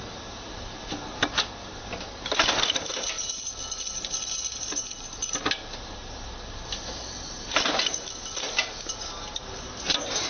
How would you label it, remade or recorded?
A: recorded